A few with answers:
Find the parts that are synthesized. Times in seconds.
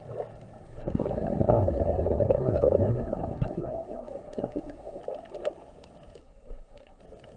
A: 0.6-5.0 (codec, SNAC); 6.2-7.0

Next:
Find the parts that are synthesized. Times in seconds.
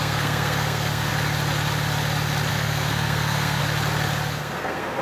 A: 0.0-1.1 (codec, SNAC); 2.5-3.6; 4.4-5.0